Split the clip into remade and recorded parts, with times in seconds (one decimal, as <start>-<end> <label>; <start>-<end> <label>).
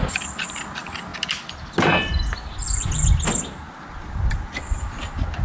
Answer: 0.0-5.4 recorded